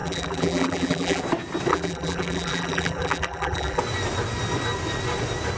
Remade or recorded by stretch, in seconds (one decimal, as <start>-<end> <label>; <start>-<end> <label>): 0.0-1.2 remade; 1.2-1.7 recorded; 1.7-3.8 remade; 3.8-5.6 recorded